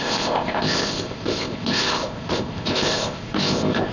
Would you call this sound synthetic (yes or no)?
yes